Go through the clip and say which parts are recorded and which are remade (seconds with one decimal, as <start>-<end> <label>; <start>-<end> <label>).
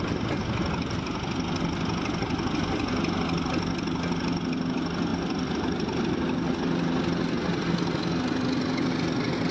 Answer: 0.0-9.5 recorded